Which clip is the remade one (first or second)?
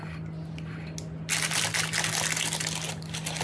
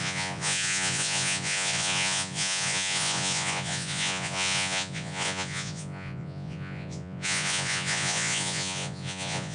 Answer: second